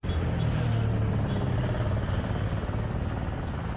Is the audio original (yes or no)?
yes